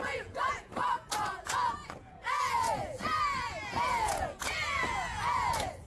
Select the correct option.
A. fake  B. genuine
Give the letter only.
A